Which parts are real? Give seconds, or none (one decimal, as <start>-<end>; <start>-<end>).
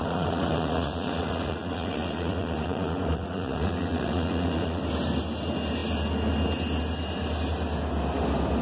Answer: 4.8-8.6